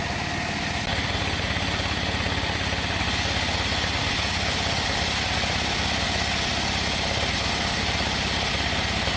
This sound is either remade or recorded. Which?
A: recorded